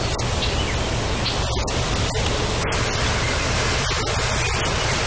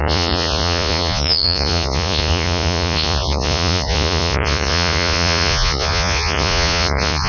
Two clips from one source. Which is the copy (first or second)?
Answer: second